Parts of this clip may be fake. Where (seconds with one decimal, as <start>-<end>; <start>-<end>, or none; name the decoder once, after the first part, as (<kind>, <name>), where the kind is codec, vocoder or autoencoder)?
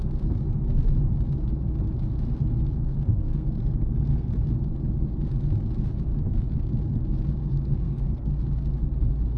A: 3.1-4.3 (codec, SNAC); 7.5-8.3